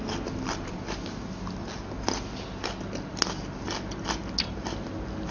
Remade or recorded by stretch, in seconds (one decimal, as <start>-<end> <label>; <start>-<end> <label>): 0.0-5.3 recorded